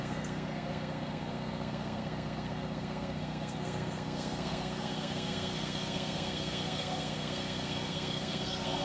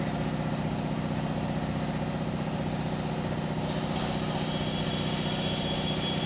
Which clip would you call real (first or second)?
second